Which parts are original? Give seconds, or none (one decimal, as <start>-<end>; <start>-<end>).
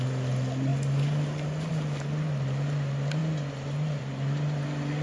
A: 0.0-5.0